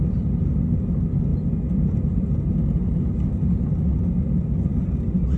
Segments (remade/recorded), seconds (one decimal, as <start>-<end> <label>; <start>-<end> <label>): 0.0-5.4 recorded

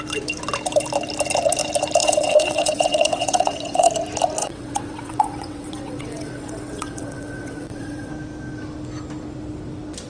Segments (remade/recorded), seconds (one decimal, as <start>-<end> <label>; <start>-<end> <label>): 0.0-2.0 recorded; 2.0-3.9 remade; 3.9-4.4 recorded; 4.4-8.1 remade; 8.1-10.1 recorded

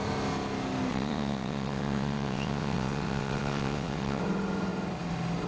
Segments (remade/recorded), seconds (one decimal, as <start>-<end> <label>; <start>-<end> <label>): 0.0-0.9 recorded; 0.9-4.2 remade; 4.2-5.5 recorded

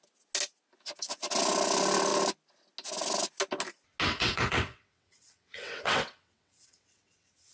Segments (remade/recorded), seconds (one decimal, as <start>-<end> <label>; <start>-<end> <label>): 0.0-4.1 recorded; 4.1-7.5 remade

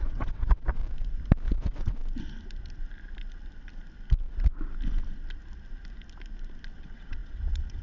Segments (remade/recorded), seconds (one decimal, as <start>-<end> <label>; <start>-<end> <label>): 0.0-0.8 remade; 0.8-1.5 recorded; 1.5-2.0 remade; 2.0-6.7 recorded; 6.7-7.8 remade

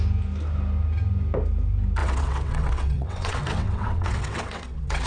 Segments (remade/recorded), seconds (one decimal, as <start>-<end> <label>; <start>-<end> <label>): 0.0-2.0 recorded; 2.0-5.1 remade

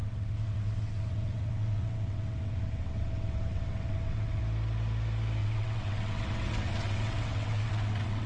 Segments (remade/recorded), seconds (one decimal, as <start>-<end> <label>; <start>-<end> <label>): 0.0-4.4 remade; 4.4-5.4 recorded; 5.4-8.3 remade